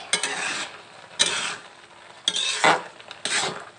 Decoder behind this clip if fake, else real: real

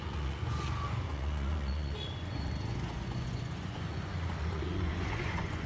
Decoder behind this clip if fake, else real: fake, vocoder, Vocos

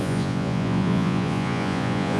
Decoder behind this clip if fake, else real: fake, vocoder, Vocos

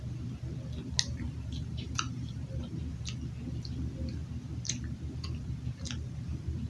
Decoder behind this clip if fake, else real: real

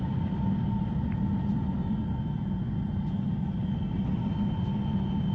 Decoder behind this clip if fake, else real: real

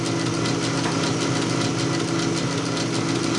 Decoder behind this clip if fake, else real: real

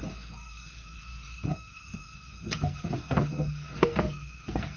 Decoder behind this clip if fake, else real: fake, codec, SNAC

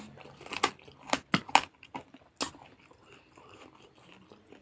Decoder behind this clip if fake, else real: real